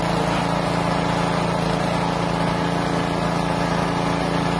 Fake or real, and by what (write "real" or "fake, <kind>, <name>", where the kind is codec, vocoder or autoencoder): real